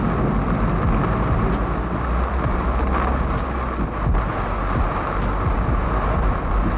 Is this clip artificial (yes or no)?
no